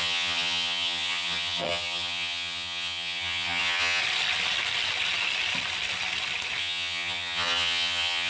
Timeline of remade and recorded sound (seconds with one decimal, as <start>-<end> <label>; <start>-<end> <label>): 0.0-4.0 remade; 4.0-6.6 recorded; 6.6-8.3 remade